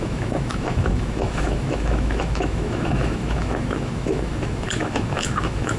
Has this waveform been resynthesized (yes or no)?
yes